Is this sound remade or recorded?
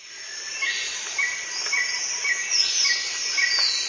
recorded